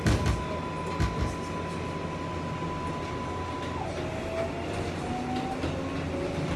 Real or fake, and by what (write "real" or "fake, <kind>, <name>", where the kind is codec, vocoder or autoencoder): real